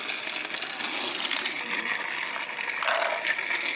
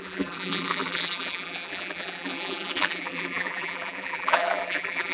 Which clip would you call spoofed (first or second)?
second